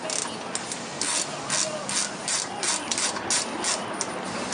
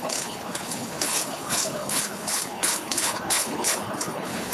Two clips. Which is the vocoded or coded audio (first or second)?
second